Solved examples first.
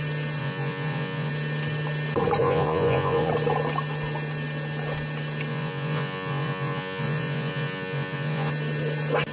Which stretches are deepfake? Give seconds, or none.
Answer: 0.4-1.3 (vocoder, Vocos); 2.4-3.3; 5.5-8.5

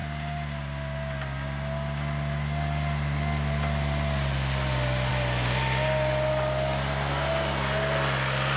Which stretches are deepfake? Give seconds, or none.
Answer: none

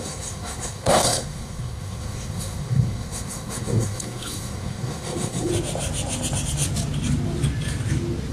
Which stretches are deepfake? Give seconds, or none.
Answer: 0.0-5.5 (codec, SNAC)

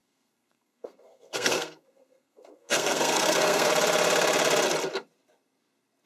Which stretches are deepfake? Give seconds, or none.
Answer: 0.0-3.7 (codec, SNAC)

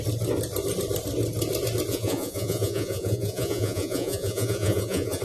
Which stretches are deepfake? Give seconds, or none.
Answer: 1.9-5.2 (vocoder, Vocos)

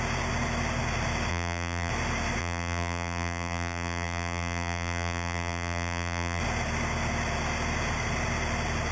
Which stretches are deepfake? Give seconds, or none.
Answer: 1.3-1.9 (vocoder, BigVGAN v2); 2.4-6.4

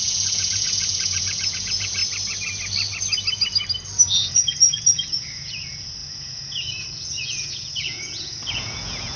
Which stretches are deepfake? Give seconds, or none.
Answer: 0.0-2.0 (vocoder, Vocos); 4.2-9.2

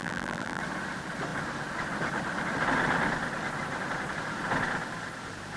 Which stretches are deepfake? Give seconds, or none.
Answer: 0.0-0.6 (vocoder, BigVGAN v2)